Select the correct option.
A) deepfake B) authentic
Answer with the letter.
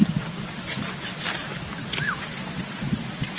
B